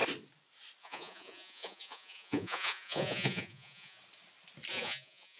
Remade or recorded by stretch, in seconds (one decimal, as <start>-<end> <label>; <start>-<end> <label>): 0.0-0.8 recorded; 0.8-4.0 remade; 4.0-4.7 recorded; 4.7-5.4 remade